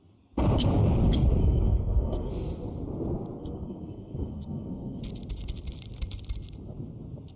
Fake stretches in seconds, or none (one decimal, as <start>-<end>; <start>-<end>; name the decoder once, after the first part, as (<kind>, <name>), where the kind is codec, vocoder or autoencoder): 1.4-2.3 (codec, SNAC); 3.4-5.0